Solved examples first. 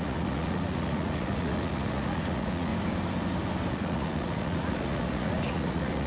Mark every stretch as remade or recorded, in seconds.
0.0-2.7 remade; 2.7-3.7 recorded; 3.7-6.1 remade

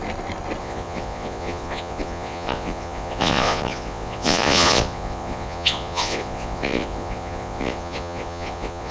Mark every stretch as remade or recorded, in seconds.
0.0-0.6 recorded; 0.6-8.9 remade

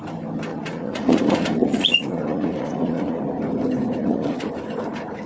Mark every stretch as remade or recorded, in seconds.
0.0-0.5 recorded; 0.5-3.2 remade; 3.2-4.0 recorded; 4.0-4.5 remade; 4.5-5.3 recorded

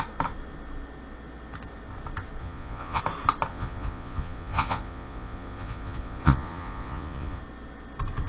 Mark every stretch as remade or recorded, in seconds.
0.0-2.4 recorded; 2.4-3.0 remade; 3.0-3.5 recorded; 3.5-7.4 remade; 7.4-8.3 recorded

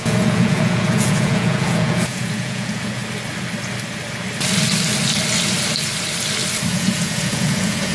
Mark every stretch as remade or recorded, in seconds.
0.0-3.0 remade; 3.0-6.7 recorded; 6.7-7.9 remade

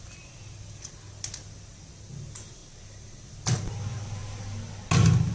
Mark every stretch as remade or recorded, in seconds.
0.0-5.3 recorded

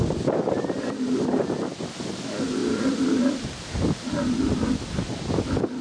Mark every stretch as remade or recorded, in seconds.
0.0-5.8 recorded

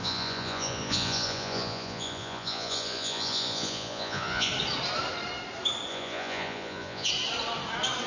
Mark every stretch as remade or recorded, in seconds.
0.0-4.5 remade; 4.5-5.9 recorded; 5.9-7.1 remade; 7.1-8.1 recorded